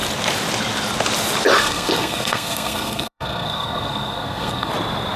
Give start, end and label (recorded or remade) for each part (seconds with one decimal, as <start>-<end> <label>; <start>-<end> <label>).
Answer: 0.0-1.6 recorded; 1.6-4.7 remade; 4.7-5.2 recorded